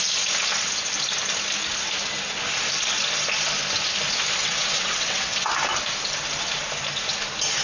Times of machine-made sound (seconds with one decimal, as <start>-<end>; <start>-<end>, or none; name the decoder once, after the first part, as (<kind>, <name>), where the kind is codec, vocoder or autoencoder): 4.4-5.5 (vocoder, WaveNeXt)